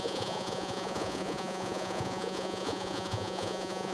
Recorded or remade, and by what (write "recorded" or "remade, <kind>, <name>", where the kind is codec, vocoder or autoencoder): remade, vocoder, Vocos